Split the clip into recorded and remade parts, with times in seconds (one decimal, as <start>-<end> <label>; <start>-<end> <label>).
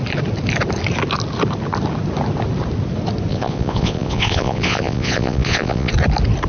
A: 0.0-3.3 recorded; 3.3-5.9 remade; 5.9-6.5 recorded